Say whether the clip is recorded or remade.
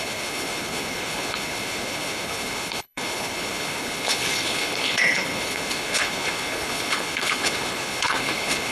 remade